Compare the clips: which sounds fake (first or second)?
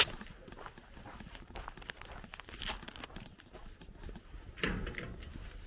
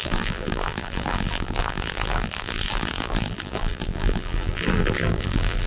second